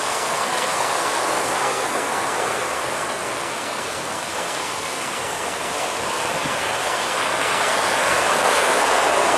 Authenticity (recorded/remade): remade